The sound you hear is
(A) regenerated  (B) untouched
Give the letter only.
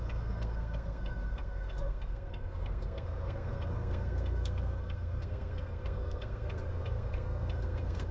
A